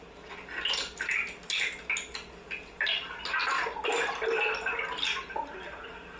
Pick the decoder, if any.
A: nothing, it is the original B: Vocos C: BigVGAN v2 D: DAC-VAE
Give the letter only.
A